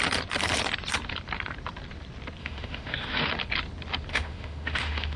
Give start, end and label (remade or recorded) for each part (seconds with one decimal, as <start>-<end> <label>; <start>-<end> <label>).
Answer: 0.0-2.4 recorded; 2.4-3.3 remade; 3.3-4.1 recorded; 4.1-5.2 remade